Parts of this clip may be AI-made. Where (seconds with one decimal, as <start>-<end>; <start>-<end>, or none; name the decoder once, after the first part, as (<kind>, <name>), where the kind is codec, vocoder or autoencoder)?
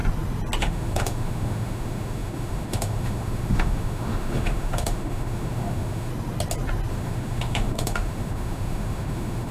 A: 0.6-6.1 (autoencoder, DAC-VAE); 6.9-9.5